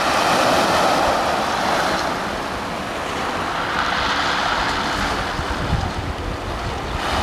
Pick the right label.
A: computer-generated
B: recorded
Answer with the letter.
B